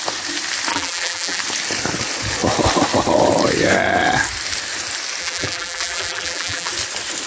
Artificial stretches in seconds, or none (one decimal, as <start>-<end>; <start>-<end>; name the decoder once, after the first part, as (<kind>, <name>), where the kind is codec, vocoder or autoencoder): 0.7-1.4 (vocoder, BigVGAN v2); 5.2-6.7